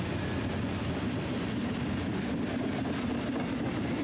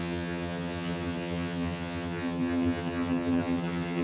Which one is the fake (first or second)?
second